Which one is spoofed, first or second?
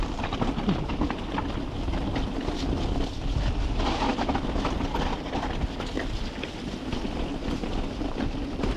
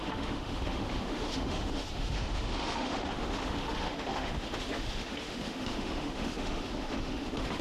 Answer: second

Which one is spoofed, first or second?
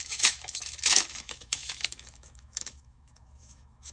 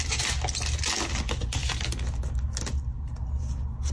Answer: first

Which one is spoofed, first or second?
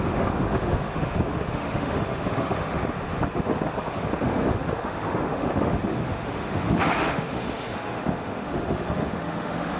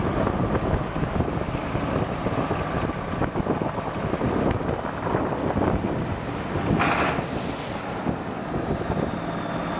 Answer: first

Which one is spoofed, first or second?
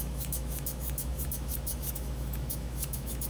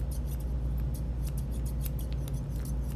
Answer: first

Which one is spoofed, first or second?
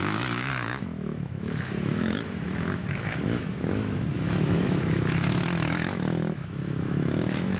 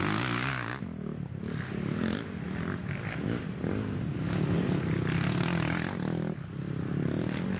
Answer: first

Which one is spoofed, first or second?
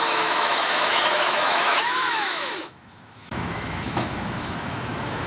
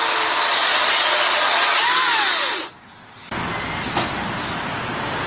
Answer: first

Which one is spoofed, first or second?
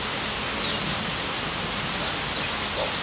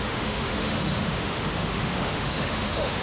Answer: second